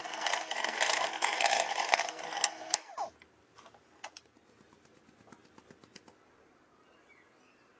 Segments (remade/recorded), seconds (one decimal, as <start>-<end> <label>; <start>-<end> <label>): 0.0-2.9 remade; 2.9-7.8 recorded